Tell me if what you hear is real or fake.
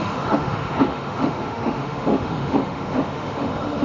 fake